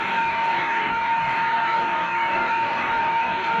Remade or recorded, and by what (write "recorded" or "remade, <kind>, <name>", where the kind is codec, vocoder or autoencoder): remade, codec, DAC